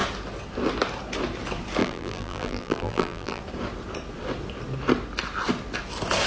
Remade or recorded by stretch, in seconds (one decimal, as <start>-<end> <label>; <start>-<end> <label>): 0.0-1.8 recorded; 1.8-3.4 remade; 3.4-6.3 recorded